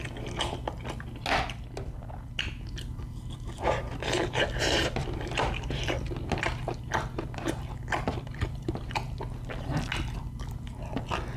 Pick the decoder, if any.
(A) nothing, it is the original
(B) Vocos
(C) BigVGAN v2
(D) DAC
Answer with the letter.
A